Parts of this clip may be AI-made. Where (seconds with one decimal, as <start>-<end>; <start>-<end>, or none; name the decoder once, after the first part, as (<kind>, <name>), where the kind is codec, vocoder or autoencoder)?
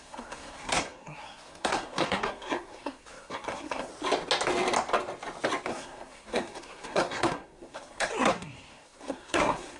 0.0-3.9 (codec, SNAC); 5.7-9.8